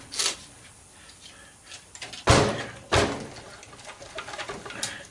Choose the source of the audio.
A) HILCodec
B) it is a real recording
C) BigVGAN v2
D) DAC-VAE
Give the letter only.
B